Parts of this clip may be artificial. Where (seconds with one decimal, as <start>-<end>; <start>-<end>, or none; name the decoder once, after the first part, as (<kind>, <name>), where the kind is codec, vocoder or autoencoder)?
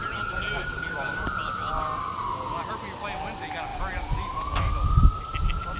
none